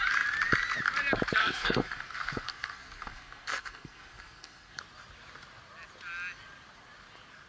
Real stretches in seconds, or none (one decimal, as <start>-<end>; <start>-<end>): 0.0-1.4; 4.8-7.5